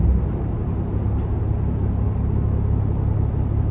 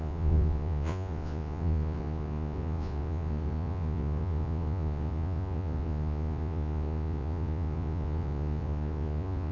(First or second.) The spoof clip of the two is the second